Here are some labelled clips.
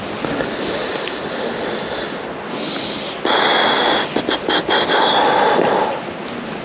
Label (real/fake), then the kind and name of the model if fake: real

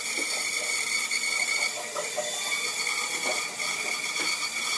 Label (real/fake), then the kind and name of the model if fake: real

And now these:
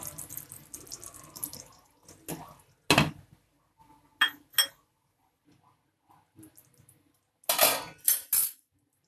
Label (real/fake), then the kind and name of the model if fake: real